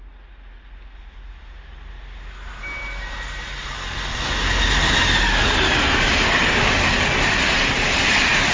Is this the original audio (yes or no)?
yes